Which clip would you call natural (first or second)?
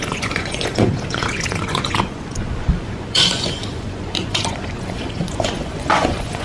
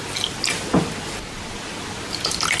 second